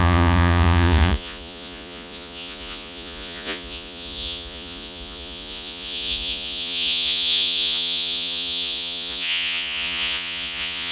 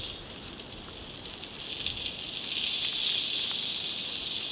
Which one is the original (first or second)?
second